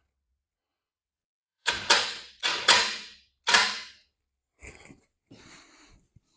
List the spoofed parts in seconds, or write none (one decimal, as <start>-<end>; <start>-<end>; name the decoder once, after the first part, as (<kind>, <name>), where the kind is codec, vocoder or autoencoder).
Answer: 0.0-2.5 (vocoder, Vocos)